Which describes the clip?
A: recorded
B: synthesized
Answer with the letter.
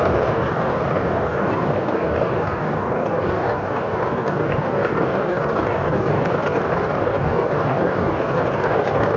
B